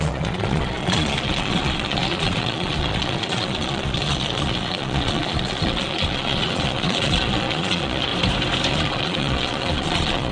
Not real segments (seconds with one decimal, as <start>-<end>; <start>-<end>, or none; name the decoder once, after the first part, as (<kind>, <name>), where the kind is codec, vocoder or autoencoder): 0.0-8.1 (vocoder, Vocos); 8.7-10.3